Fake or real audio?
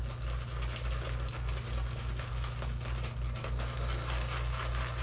real